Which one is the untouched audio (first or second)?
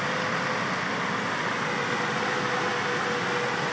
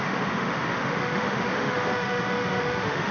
first